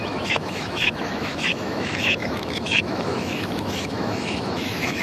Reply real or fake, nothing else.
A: fake